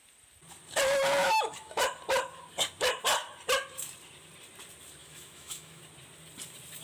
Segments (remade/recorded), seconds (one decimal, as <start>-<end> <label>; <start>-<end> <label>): 0.0-1.2 recorded; 1.2-1.8 remade; 1.8-5.0 recorded; 5.0-5.8 remade; 5.8-6.8 recorded